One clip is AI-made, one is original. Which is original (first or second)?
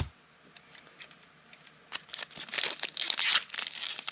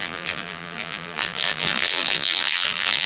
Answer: first